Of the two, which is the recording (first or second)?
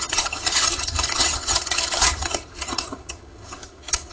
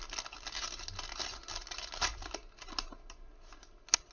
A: second